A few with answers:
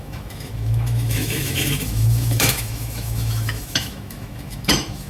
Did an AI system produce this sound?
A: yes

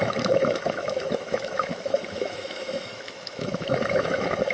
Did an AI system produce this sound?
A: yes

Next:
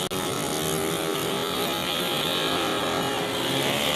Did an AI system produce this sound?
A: no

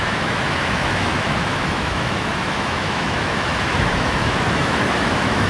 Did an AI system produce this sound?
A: yes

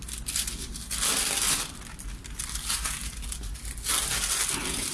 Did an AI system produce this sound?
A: no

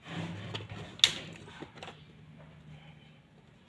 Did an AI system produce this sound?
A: no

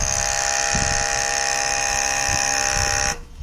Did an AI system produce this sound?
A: yes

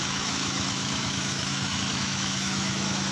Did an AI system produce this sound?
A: yes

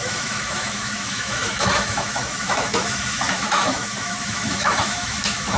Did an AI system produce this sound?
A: yes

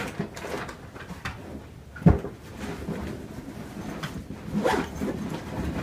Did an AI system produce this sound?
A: no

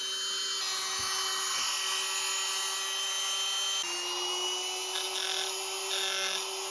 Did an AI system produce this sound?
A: no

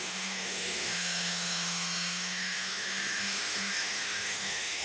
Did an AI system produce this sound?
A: yes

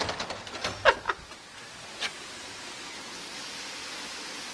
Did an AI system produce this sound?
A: no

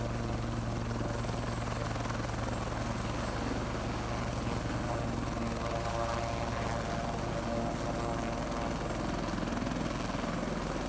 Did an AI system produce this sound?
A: no